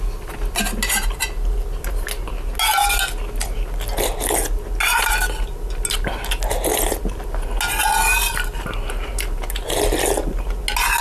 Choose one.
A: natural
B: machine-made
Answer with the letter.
A